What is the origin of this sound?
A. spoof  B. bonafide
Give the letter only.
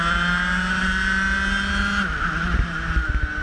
B